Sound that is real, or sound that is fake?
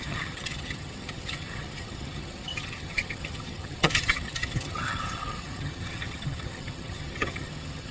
fake